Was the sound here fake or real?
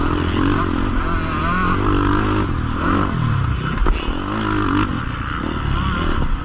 real